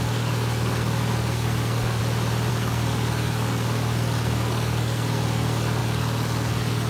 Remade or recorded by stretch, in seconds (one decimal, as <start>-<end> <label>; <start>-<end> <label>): 0.0-2.0 remade; 2.0-2.5 recorded; 2.5-6.9 remade